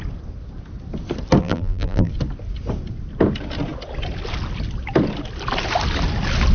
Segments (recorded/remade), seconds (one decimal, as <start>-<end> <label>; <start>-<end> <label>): 0.0-1.4 recorded; 1.4-2.1 remade; 2.1-6.5 recorded